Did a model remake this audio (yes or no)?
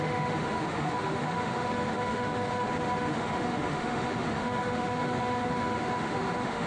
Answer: yes